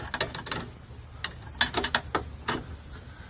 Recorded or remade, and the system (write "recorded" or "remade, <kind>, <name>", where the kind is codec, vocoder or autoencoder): recorded